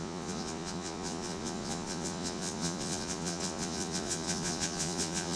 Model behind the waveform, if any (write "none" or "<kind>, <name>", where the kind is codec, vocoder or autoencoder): vocoder, Vocos